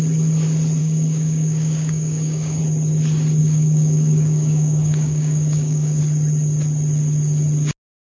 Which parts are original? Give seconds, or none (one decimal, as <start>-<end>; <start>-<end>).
0.0-0.8; 2.6-3.4; 6.0-8.2

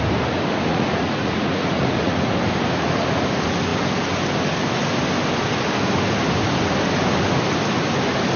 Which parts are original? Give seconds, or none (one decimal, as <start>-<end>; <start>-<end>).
0.0-0.7; 2.3-8.4

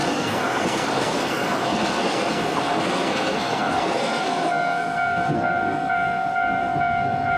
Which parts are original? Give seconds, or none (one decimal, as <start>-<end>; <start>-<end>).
none

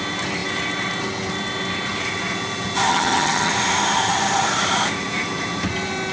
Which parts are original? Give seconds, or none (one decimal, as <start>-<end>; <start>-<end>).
0.0-2.9; 3.5-6.1

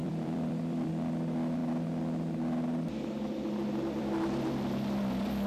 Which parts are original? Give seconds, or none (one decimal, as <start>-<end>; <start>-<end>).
0.9-5.5

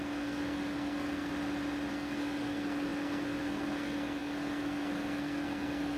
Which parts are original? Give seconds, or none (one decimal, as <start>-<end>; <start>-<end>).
1.3-1.9

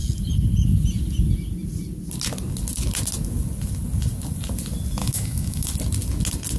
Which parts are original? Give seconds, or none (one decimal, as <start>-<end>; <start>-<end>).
0.0-5.0; 5.7-6.6

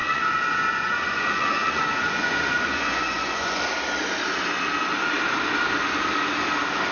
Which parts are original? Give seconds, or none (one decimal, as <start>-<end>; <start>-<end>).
3.6-6.9